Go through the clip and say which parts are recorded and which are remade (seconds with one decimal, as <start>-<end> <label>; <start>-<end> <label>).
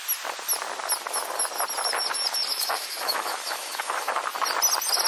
0.0-2.5 recorded; 2.5-4.1 remade; 4.1-5.1 recorded